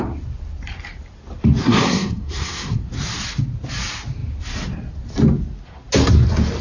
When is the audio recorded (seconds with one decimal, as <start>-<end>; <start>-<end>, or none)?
0.0-1.6; 2.8-6.6